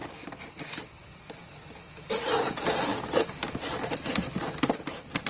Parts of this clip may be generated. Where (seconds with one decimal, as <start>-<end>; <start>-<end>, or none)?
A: 2.9-3.4

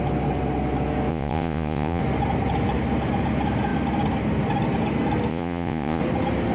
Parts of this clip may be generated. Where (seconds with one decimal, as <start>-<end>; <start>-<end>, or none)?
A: 1.1-2.0; 5.3-6.0

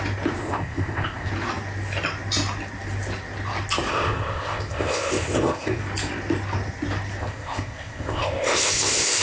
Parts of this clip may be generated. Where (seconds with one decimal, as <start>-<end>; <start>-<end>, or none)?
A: 0.4-1.3; 3.9-5.8; 7.2-9.2

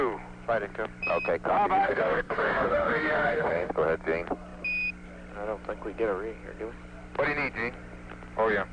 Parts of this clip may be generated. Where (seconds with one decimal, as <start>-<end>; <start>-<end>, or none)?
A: 1.8-3.7

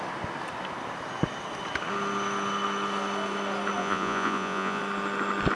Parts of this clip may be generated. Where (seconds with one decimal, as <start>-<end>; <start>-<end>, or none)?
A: 3.8-4.8

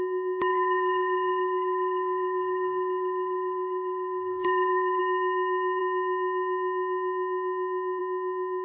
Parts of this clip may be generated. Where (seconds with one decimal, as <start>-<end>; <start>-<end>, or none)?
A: 0.5-5.0

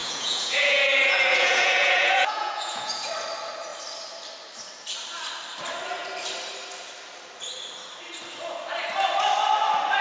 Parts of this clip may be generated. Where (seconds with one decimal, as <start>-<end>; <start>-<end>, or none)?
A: 0.0-3.1